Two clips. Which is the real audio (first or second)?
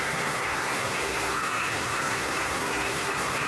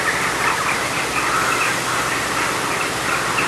second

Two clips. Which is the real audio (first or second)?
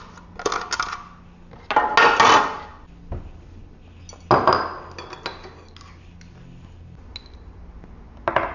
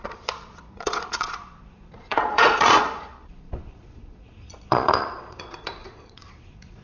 first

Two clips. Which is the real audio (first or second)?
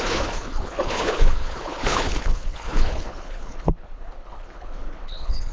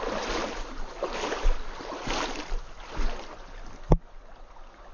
second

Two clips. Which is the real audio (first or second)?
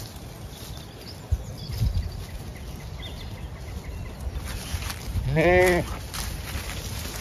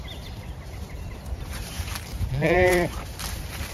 first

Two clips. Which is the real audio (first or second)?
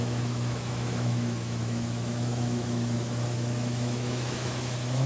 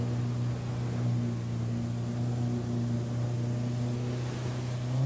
second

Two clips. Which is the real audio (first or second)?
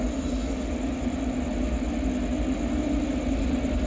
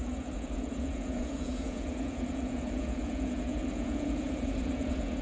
first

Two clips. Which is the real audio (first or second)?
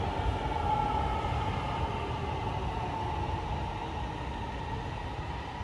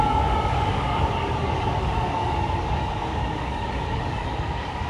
first